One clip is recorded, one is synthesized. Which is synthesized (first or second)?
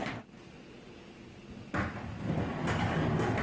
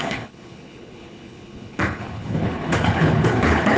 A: second